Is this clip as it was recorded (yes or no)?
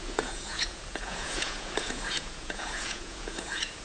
no